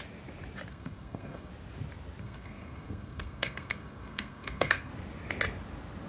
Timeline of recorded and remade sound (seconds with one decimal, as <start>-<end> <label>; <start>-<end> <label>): 0.0-0.7 recorded; 0.7-1.5 remade; 1.5-2.2 recorded; 2.2-4.9 remade; 4.9-6.1 recorded